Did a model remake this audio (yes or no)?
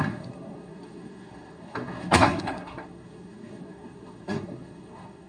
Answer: yes